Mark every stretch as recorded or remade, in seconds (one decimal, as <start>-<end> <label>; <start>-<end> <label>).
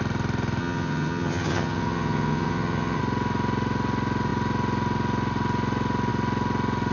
0.0-0.6 recorded; 0.6-3.0 remade; 3.0-6.9 recorded